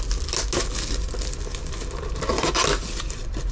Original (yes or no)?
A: yes